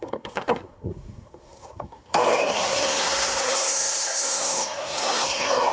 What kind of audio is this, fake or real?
fake